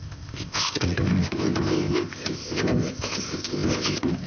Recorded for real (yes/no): no